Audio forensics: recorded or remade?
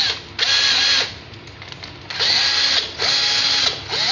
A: recorded